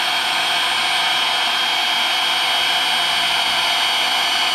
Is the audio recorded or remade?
recorded